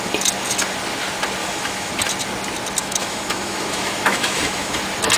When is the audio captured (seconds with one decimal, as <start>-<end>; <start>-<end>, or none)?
0.0-1.4; 1.9-2.8; 4.8-5.2